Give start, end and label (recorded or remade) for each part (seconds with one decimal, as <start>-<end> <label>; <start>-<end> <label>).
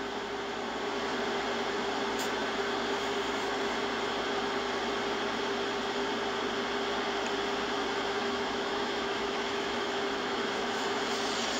0.0-8.2 recorded; 8.2-11.0 remade; 11.0-11.6 recorded